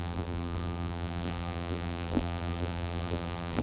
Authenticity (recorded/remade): remade